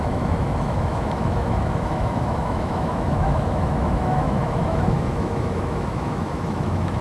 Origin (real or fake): fake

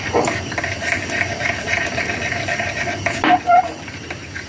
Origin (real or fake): real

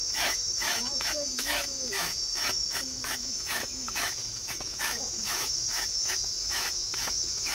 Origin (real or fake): fake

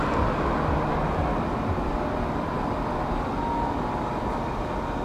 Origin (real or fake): real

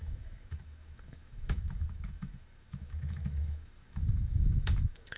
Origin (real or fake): fake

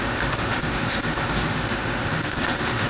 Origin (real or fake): fake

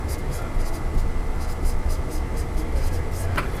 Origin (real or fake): real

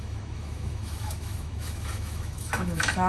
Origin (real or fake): fake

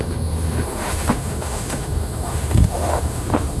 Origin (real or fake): fake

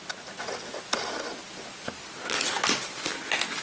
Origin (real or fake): real